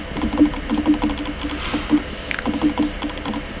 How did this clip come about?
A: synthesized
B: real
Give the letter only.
B